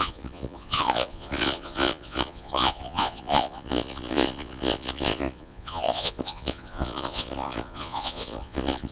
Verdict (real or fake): fake